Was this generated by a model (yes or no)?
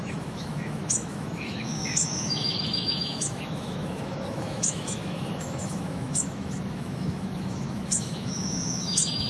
yes